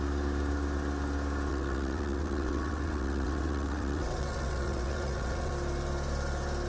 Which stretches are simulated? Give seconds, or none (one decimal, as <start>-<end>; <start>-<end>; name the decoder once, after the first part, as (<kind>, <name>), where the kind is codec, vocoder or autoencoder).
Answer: 1.5-5.5 (vocoder, WaveNeXt)